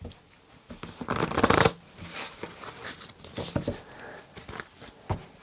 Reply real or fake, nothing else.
real